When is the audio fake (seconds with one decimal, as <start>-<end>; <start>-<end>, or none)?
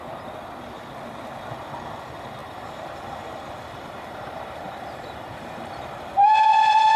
2.4-6.0